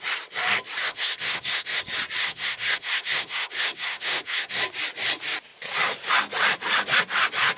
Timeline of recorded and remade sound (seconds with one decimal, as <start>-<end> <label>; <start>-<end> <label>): 0.0-0.8 recorded; 0.8-1.8 remade; 1.8-2.2 recorded; 2.2-4.6 remade; 4.6-7.6 recorded